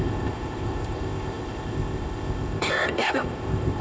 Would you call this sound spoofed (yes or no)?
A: yes